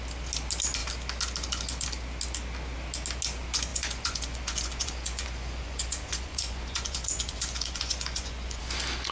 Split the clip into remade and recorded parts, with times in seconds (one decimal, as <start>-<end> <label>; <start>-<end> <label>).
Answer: 0.0-3.7 recorded; 3.7-8.6 remade; 8.6-9.1 recorded